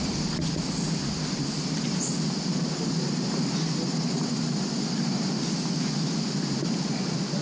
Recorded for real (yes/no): yes